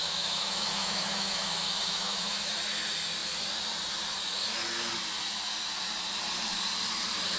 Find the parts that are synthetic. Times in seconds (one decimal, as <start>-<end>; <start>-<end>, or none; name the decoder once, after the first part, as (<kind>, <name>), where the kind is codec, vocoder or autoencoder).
0.0-2.5 (autoencoder, DAC-VAE)